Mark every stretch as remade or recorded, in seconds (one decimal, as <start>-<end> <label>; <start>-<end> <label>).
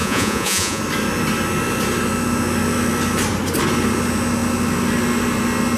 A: 0.0-0.8 remade; 0.8-5.8 recorded